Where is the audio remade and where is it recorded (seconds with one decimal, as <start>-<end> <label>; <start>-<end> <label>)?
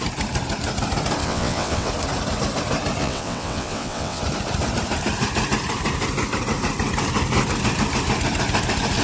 0.0-1.2 recorded; 1.2-1.9 remade; 1.9-3.0 recorded; 3.0-4.2 remade; 4.2-9.0 recorded